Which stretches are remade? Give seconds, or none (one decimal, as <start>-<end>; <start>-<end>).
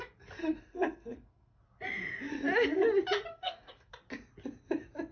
0.4-1.6; 3.3-3.9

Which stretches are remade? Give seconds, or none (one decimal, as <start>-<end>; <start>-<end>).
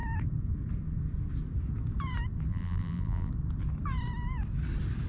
2.5-3.3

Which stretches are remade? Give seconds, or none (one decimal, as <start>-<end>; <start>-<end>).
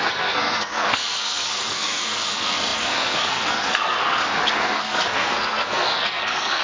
0.0-6.6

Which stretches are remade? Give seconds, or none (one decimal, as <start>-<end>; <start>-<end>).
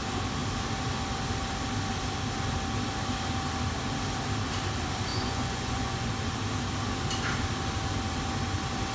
5.1-6.1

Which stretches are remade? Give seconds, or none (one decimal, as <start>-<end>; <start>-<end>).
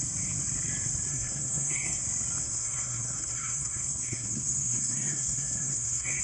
1.1-2.0; 2.4-6.2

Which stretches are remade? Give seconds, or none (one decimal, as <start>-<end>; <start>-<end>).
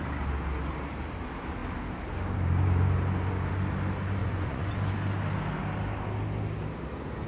4.2-4.7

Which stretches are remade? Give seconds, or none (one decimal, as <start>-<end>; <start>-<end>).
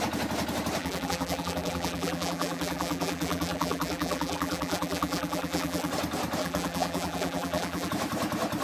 0.8-5.9; 6.4-7.9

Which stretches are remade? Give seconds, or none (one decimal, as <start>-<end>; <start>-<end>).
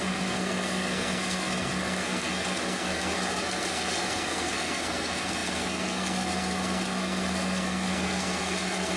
0.0-9.0